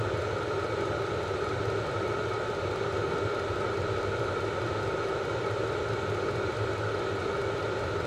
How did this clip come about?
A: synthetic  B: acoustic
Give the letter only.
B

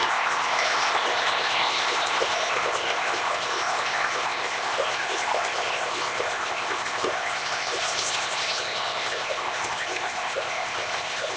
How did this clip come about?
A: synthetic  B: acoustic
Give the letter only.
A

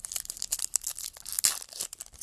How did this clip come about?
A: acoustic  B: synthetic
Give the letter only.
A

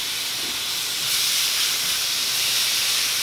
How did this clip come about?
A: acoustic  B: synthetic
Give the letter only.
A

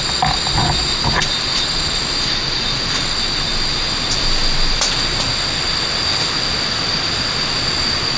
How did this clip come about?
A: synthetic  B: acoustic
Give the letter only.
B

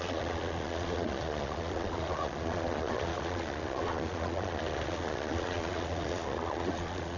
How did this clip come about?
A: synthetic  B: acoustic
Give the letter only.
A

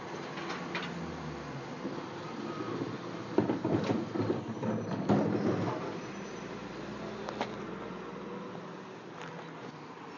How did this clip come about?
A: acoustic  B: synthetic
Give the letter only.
A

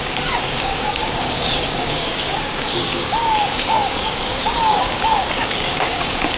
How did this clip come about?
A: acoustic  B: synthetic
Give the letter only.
B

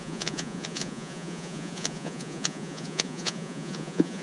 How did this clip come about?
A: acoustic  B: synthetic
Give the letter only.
B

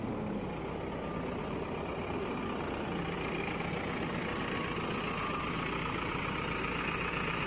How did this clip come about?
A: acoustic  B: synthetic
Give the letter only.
A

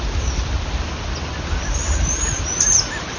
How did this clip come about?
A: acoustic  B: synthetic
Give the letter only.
A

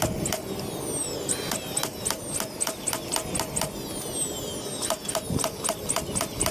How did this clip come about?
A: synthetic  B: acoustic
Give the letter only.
B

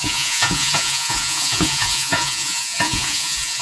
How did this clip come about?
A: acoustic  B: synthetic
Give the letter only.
B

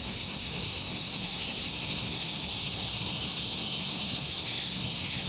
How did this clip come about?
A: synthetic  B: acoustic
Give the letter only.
A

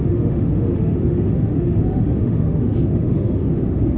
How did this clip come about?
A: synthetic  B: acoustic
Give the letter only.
A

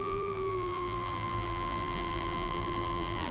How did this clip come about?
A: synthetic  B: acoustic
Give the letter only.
A